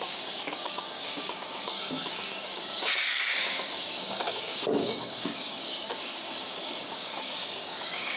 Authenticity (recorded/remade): remade